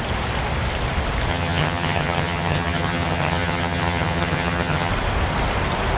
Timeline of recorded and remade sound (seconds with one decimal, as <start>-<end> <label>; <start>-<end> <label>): 0.0-1.3 recorded; 1.3-4.9 remade; 4.9-6.0 recorded